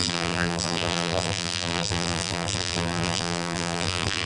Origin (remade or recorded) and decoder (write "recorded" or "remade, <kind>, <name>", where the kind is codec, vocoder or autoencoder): remade, vocoder, BigVGAN v2